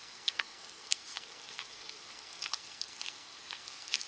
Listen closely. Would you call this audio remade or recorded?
remade